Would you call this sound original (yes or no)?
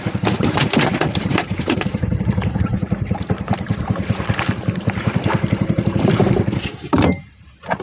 no